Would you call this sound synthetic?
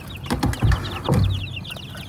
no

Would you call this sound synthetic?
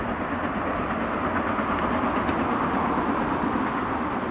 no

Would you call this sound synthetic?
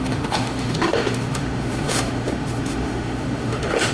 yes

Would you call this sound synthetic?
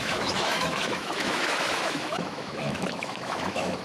yes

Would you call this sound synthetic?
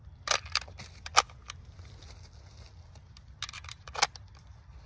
no